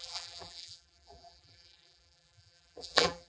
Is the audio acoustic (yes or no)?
no